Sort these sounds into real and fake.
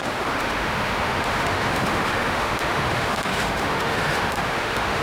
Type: fake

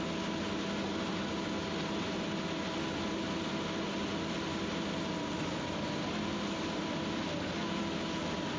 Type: real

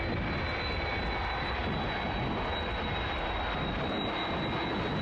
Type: real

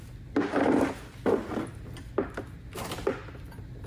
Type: real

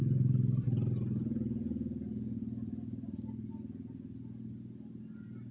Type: real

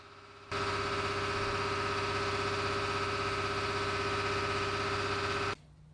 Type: real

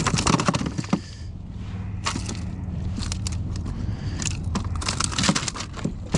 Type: real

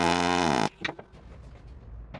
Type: real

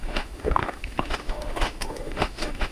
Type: fake